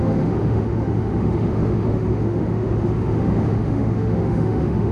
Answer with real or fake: fake